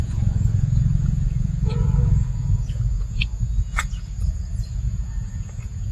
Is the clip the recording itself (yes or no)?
no